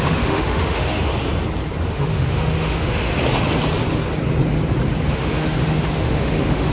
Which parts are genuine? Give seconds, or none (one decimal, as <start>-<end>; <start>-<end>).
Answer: 1.1-1.8; 3.1-5.1